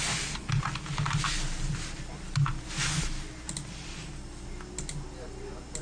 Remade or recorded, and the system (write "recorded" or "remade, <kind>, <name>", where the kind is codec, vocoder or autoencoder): recorded